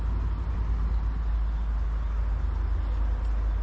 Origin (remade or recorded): recorded